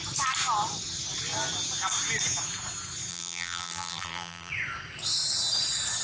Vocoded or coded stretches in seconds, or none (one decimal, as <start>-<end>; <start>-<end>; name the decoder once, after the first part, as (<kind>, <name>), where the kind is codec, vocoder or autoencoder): 3.1-4.5 (vocoder, BigVGAN v2)